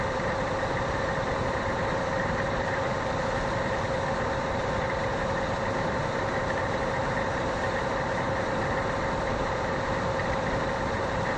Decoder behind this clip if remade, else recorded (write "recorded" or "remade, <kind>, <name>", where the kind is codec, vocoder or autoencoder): recorded